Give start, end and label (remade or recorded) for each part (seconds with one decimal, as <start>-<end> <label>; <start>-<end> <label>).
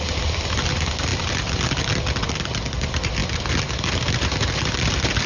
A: 0.0-5.3 recorded